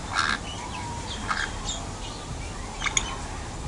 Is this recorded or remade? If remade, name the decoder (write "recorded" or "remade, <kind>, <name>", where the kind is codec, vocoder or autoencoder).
recorded